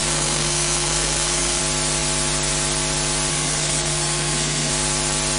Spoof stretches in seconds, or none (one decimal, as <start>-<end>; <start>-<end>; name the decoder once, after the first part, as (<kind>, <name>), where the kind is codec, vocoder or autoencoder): 0.0-1.6 (codec, SNAC); 3.3-4.7